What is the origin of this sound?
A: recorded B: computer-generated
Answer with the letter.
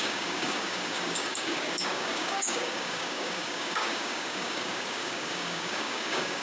B